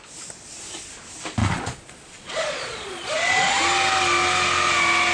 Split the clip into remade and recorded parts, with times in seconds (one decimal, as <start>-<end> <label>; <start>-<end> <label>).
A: 0.0-1.4 recorded; 1.4-3.5 remade; 3.5-5.1 recorded